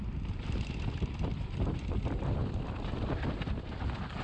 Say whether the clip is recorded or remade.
recorded